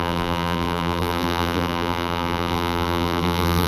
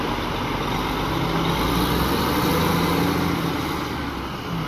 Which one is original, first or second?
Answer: second